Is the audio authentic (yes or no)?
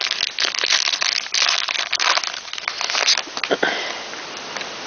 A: yes